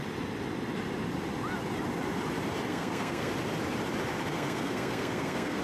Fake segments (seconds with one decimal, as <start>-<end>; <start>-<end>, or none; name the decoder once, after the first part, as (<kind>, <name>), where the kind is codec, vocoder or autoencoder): 2.7-3.3 (codec, SNAC); 4.3-5.6

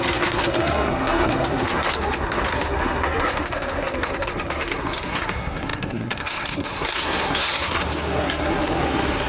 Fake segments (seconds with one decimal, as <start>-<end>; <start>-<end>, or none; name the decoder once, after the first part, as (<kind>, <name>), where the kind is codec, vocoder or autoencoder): 0.0-9.3 (codec, SNAC)